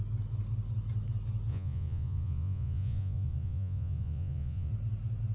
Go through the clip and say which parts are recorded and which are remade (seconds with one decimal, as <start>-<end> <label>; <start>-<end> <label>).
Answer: 0.0-1.5 recorded; 1.5-4.7 remade; 4.7-5.3 recorded